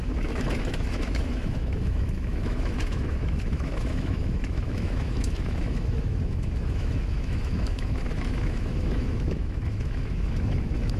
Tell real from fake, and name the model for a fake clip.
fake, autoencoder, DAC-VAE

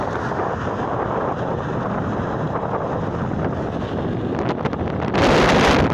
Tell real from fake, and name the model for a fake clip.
real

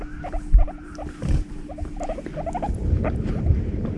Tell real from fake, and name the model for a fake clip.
real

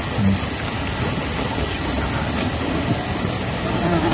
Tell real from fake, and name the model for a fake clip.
real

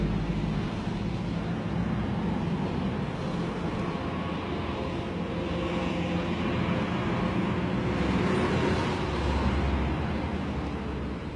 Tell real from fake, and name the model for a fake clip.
real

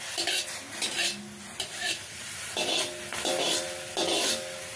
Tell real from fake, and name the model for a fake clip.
real